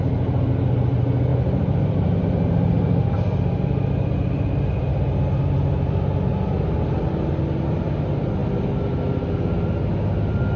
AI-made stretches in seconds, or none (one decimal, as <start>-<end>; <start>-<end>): 0.0-6.3; 7.3-8.4